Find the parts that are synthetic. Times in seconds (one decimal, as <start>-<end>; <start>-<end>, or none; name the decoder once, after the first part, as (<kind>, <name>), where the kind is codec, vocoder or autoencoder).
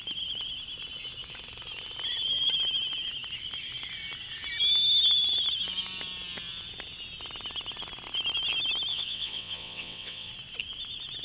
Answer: 8.9-10.3 (vocoder, WaveNeXt)